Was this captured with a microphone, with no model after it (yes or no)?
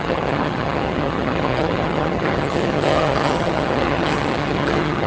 no